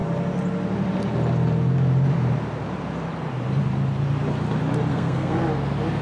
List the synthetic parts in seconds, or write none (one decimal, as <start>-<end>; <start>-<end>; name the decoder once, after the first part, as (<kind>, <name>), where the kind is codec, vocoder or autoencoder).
4.9-5.4 (codec, SNAC)